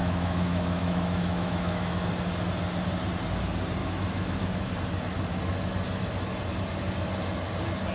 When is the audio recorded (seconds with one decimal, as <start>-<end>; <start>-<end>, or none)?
2.1-3.8; 4.7-7.9